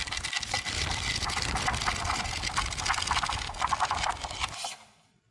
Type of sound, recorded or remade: recorded